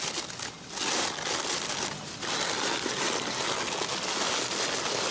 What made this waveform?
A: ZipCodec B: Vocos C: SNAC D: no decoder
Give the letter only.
D